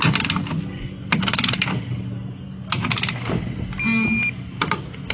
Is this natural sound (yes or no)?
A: yes